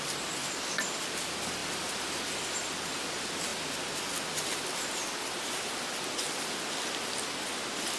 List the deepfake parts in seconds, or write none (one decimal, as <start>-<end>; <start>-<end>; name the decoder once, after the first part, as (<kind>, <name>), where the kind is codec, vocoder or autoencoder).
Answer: none

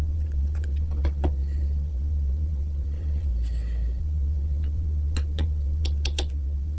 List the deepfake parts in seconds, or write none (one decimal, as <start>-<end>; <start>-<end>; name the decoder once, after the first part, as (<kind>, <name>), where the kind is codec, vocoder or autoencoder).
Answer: 0.0-3.3 (vocoder, WaveNeXt); 4.0-6.8

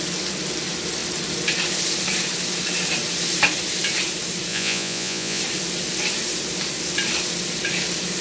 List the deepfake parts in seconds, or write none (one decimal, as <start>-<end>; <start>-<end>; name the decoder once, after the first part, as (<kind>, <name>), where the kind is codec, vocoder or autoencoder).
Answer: 4.5-5.4 (vocoder, Vocos)

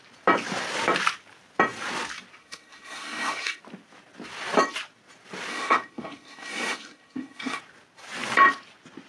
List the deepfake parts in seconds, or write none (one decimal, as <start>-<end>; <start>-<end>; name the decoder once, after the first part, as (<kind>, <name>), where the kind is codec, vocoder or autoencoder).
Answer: 2.4-3.6 (codec, SNAC); 5.5-7.6

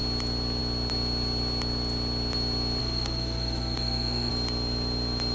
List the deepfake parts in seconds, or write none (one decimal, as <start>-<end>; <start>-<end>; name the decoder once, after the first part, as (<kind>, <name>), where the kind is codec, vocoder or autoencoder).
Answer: 2.8-4.3 (autoencoder, DAC-VAE)